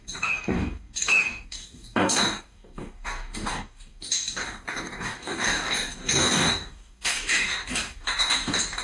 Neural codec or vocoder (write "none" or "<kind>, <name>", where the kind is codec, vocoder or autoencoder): codec, DAC